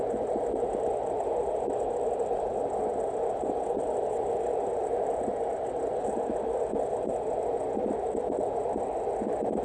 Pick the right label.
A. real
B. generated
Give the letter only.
A